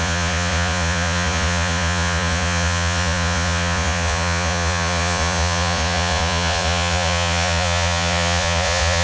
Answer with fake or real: fake